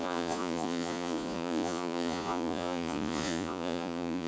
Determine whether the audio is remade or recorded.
remade